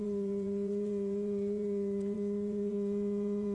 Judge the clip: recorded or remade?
remade